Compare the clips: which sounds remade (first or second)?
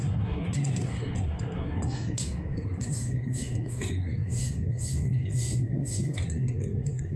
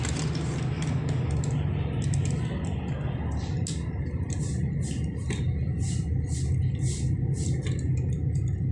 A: first